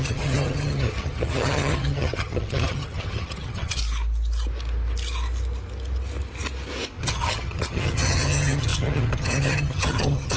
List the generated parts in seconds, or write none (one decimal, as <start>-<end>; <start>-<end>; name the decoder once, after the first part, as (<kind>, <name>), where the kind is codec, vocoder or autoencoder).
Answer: 0.0-3.8 (vocoder, HiFi-GAN); 7.0-10.4